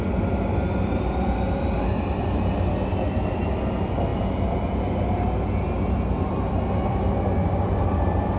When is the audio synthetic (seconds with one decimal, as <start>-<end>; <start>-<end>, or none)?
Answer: none